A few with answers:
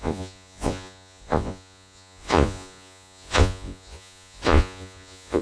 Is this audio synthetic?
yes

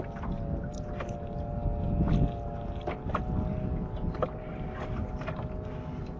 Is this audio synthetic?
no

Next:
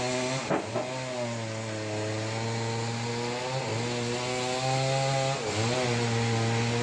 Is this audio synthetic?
no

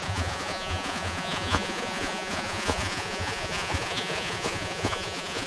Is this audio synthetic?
yes